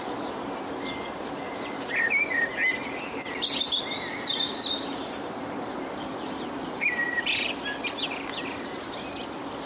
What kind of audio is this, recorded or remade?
recorded